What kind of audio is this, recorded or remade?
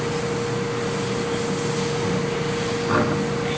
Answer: recorded